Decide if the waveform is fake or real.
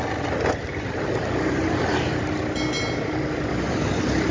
real